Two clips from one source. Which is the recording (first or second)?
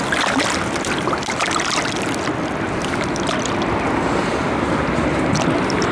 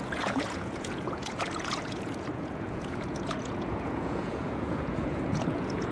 first